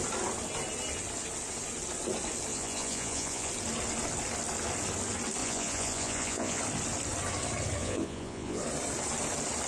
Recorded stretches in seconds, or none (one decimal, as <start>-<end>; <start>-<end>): 0.0-2.5; 3.5-5.4; 6.6-7.8; 8.6-9.7